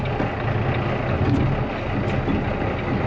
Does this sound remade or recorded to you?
recorded